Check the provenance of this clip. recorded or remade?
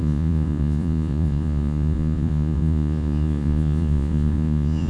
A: remade